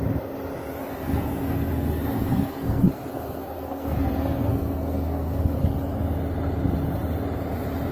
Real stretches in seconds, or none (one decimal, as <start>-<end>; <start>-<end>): 0.0-0.9; 5.6-7.9